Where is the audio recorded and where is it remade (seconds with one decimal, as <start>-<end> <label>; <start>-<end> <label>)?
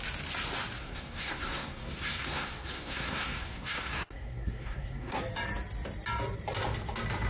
0.0-0.8 recorded; 0.8-5.2 remade; 5.2-7.3 recorded